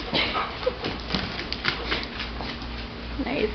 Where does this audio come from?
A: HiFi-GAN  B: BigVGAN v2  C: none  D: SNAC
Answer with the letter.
C